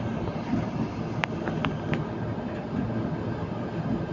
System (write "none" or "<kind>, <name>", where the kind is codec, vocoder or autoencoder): none